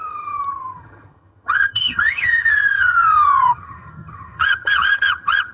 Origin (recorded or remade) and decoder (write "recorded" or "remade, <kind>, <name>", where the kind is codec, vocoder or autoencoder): remade, vocoder, HiFi-GAN